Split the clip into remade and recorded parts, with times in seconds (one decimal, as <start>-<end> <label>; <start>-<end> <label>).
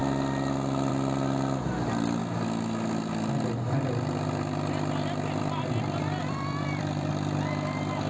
0.0-6.2 recorded; 6.2-7.1 remade; 7.1-8.1 recorded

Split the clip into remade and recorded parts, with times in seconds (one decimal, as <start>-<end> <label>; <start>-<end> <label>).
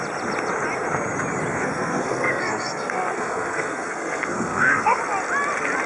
0.0-1.5 recorded; 1.5-5.0 remade; 5.0-5.9 recorded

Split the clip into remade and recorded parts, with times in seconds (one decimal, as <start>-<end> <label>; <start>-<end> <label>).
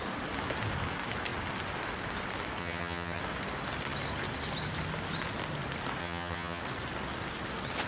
0.0-2.6 recorded; 2.6-3.2 remade; 3.2-6.0 recorded; 6.0-6.6 remade; 6.6-7.9 recorded